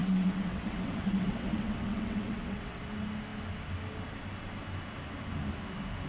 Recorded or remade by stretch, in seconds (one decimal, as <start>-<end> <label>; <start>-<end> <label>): 0.0-2.8 remade; 2.8-6.1 recorded